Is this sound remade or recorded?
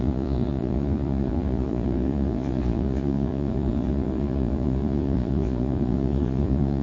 remade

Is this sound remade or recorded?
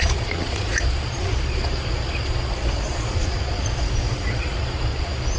remade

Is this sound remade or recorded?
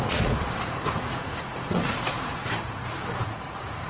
remade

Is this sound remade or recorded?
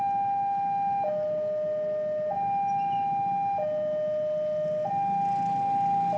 recorded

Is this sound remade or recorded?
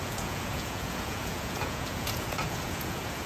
remade